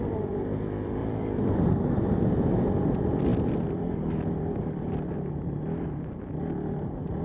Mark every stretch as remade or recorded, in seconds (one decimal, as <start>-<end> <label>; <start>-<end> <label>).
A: 0.0-1.0 recorded; 1.0-1.7 remade; 1.7-3.3 recorded; 3.3-5.8 remade; 5.8-7.2 recorded